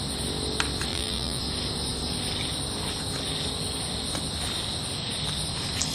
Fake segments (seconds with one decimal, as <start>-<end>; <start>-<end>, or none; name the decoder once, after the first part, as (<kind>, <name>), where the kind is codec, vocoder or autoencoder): 0.9-1.4 (vocoder, BigVGAN v2)